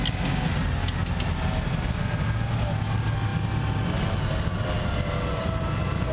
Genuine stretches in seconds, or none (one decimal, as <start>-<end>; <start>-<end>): 0.0-6.1